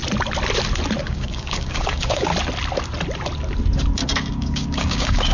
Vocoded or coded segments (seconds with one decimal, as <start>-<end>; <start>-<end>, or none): 1.0-2.3; 4.3-5.3